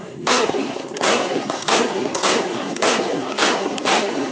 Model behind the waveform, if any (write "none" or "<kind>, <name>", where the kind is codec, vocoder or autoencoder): codec, SNAC